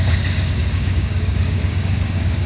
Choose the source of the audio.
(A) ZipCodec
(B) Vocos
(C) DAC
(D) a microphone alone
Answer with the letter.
C